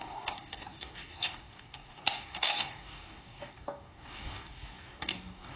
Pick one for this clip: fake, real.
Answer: fake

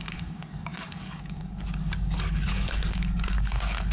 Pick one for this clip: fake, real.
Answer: fake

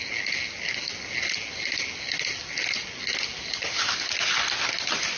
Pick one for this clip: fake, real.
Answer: real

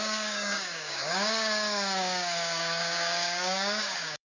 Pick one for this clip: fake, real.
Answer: fake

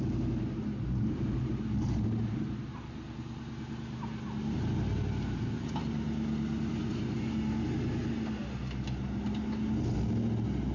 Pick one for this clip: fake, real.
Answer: real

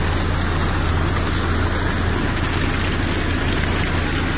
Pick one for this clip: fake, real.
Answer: real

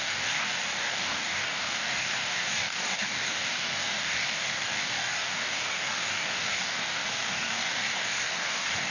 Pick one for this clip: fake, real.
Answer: fake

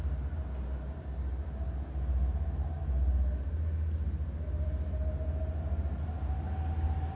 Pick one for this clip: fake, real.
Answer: real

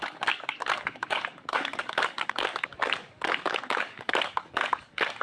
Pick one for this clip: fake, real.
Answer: fake